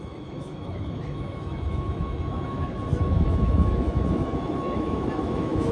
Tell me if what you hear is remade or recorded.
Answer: remade